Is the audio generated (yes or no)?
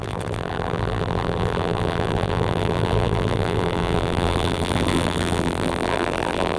yes